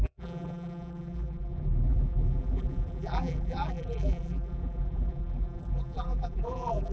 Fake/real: fake